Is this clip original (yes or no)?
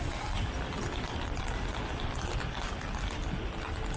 yes